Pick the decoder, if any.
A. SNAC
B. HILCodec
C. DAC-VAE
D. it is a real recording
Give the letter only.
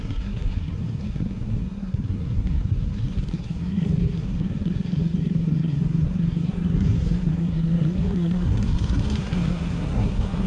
A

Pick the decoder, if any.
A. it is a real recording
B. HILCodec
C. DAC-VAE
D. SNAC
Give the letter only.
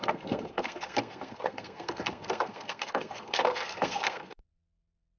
D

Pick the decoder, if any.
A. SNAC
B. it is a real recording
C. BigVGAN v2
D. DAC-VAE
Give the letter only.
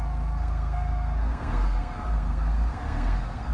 A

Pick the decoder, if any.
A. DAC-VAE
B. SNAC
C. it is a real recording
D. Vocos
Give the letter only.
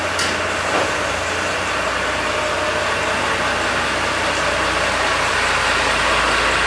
C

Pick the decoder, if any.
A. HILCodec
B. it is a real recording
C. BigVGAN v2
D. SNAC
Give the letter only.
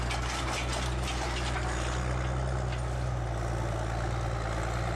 B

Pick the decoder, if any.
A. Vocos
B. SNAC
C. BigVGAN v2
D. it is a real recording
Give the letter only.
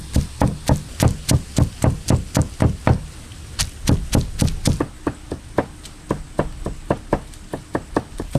D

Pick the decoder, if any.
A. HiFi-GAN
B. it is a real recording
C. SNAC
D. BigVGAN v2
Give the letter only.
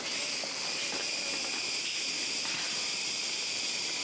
B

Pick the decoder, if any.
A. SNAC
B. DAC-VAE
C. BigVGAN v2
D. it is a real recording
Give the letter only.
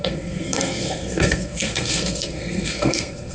A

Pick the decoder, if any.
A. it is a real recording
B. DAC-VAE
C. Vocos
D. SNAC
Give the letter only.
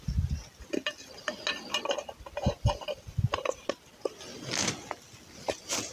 A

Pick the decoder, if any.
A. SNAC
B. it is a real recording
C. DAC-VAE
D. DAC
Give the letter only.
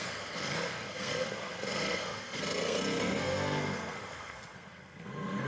A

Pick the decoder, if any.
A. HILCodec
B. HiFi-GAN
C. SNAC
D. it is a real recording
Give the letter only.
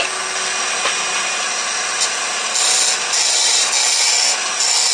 D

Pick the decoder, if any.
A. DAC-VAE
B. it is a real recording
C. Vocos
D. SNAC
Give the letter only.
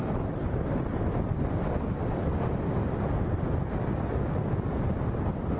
B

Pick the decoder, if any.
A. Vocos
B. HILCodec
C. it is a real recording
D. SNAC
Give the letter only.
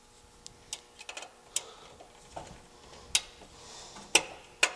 C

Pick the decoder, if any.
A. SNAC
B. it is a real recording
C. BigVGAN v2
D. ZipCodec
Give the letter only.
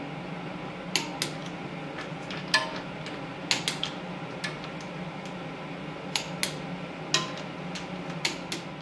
B